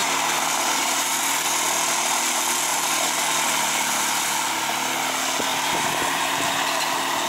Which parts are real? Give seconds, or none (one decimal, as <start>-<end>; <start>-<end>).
1.2-2.7; 3.2-5.5; 6.6-7.3